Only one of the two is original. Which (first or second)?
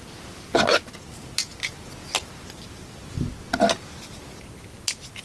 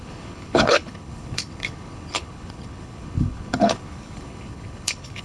first